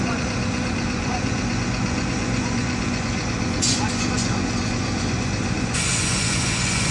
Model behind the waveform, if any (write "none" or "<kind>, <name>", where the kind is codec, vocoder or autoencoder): vocoder, Vocos